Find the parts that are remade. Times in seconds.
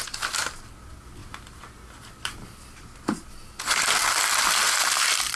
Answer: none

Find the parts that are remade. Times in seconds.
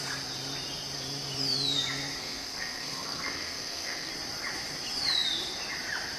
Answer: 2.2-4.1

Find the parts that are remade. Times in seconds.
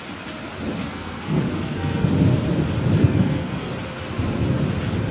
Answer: 0.8-2.1; 3.0-3.7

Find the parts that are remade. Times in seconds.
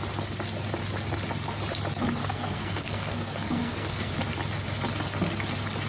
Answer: 2.2-4.1